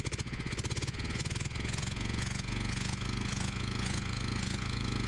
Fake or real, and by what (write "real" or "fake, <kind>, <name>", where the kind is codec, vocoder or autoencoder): fake, vocoder, Vocos